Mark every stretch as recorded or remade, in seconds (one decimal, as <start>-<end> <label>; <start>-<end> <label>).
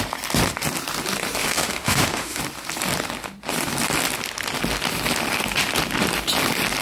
0.0-1.4 recorded; 1.4-2.4 remade; 2.4-6.8 recorded